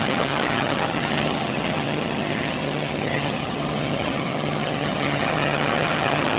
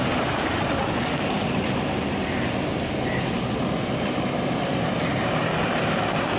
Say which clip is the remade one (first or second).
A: first